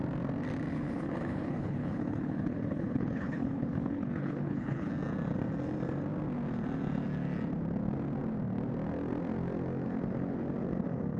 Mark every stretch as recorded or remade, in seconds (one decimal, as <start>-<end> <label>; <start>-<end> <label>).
0.0-0.7 recorded; 0.7-4.9 remade; 4.9-11.2 recorded